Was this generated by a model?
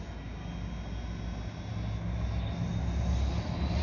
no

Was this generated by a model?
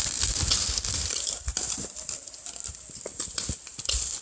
yes